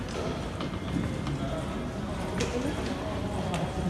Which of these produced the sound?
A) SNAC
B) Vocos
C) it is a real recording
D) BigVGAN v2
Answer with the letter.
C